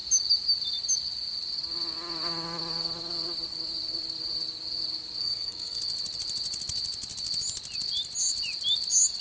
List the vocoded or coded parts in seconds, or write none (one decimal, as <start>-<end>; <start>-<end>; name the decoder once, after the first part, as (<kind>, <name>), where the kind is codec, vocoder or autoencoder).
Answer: 5.2-5.8 (codec, SNAC)